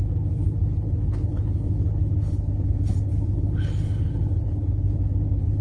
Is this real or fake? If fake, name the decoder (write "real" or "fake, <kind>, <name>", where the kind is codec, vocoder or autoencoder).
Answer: fake, codec, HILCodec